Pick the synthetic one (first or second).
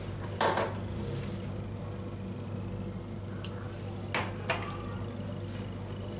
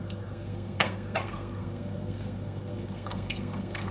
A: second